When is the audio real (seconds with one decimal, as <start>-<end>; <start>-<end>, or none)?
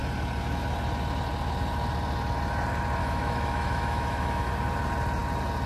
0.0-3.0; 4.5-5.7